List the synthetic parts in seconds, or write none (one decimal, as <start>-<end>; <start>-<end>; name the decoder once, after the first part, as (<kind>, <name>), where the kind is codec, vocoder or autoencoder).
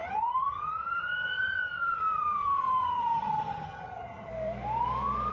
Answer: 0.0-4.3 (vocoder, HiFi-GAN)